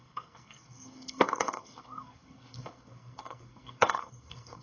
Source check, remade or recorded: remade